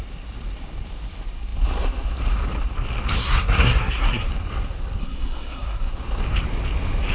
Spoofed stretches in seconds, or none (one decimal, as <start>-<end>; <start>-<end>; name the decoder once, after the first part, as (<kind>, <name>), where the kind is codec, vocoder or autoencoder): 3.2-4.3 (codec, SNAC); 5.0-5.9